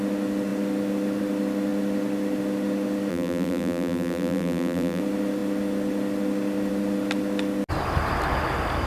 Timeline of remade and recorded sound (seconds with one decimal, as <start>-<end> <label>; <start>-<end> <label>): 0.0-3.1 recorded; 3.1-5.0 remade; 5.0-8.9 recorded